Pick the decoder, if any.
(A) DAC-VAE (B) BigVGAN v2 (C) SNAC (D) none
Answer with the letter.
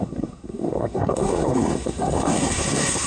C